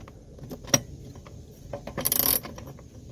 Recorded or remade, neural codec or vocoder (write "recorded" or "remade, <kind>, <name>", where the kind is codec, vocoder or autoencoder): recorded